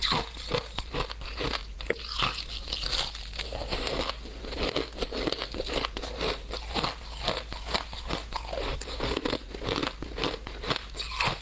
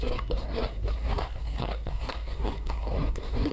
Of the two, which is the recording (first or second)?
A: first